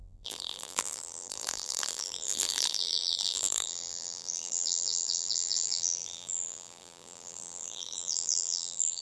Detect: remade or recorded remade